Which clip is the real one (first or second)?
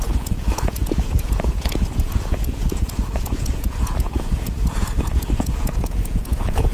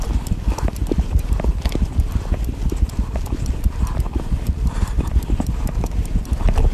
second